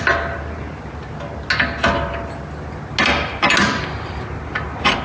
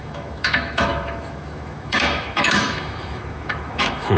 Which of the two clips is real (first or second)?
first